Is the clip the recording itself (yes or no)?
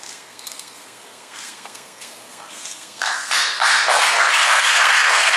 no